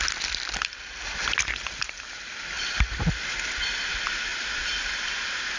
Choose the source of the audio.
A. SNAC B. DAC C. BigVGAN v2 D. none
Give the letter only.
D